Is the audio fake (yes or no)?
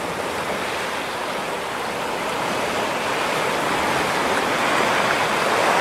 no